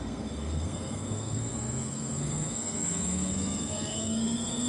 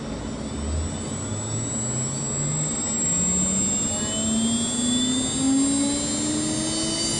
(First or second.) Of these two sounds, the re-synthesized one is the first